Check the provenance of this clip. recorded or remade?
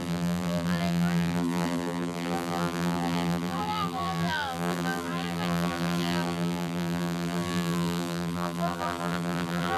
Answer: remade